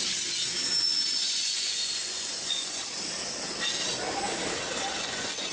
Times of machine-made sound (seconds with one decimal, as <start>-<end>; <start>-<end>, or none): 0.8-2.8; 5.0-5.5